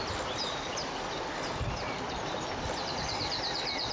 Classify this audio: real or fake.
real